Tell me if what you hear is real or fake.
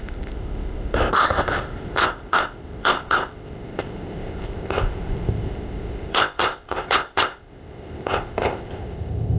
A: fake